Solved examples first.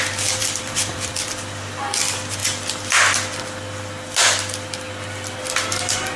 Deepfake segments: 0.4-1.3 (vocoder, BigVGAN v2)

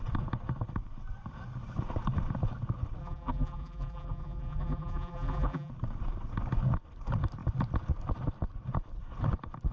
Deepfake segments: 3.0-5.7 (vocoder, BigVGAN v2)

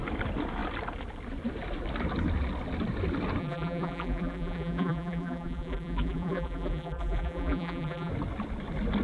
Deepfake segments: 3.4-8.1 (vocoder, BigVGAN v2)

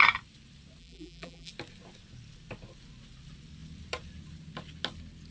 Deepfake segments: 0.8-1.5 (vocoder, BigVGAN v2)

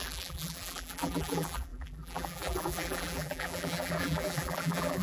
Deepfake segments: 0.0-5.0 (vocoder, BigVGAN v2)